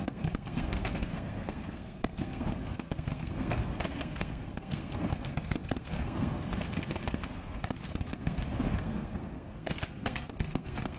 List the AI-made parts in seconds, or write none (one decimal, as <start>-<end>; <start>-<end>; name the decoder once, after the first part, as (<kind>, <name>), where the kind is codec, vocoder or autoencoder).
0.0-11.0 (codec, SNAC)